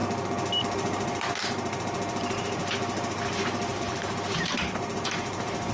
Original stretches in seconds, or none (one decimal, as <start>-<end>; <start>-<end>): 0.0-0.6; 2.6-3.8